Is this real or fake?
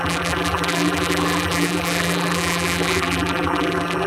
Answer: fake